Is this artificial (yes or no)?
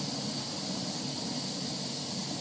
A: no